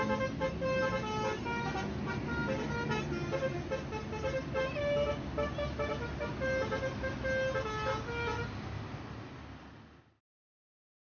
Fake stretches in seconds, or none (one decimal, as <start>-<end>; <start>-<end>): none